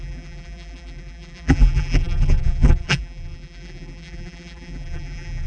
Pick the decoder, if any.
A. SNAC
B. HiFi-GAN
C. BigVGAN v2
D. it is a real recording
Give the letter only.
C